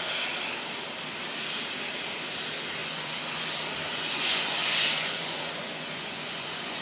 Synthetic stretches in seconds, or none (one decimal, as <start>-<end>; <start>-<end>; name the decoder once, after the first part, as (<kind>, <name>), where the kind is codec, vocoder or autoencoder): 2.8-3.5 (vocoder, Vocos); 3.9-6.8